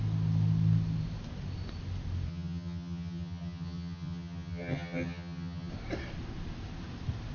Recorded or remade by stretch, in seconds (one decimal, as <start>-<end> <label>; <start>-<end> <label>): 0.0-2.3 recorded; 2.3-5.7 remade; 5.7-7.3 recorded